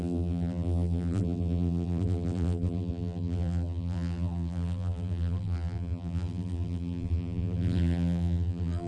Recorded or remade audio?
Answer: remade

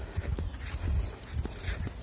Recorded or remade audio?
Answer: recorded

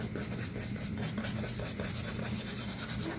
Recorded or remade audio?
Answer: recorded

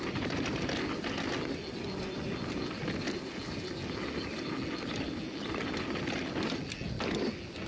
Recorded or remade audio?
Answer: recorded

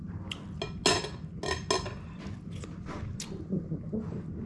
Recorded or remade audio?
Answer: recorded